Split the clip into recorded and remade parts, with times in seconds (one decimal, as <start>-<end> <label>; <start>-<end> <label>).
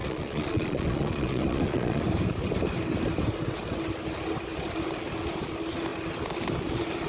0.0-2.0 remade; 2.0-7.1 recorded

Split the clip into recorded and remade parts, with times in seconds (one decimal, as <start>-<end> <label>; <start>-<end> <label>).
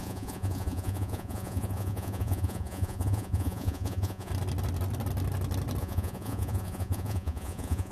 0.0-4.3 remade; 4.3-5.8 recorded; 5.8-7.9 remade